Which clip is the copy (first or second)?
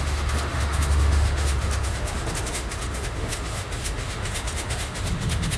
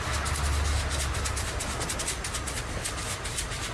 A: first